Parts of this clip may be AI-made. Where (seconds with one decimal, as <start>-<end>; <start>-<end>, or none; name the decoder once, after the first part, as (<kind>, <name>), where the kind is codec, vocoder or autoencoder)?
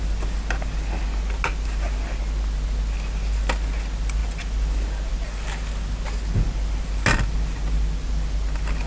none